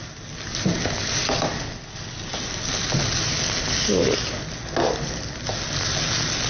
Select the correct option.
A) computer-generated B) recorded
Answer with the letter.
B